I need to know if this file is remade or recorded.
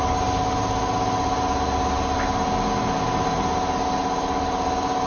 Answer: recorded